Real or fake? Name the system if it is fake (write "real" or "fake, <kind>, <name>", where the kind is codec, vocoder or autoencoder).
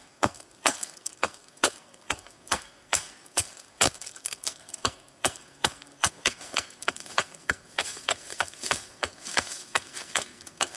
fake, codec, SNAC